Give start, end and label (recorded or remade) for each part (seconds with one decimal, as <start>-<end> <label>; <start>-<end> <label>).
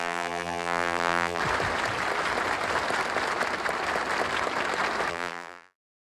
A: 0.0-1.4 remade; 1.4-5.1 recorded; 5.1-6.1 remade